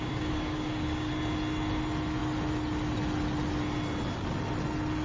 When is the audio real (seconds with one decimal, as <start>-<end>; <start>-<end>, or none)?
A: 1.1-5.0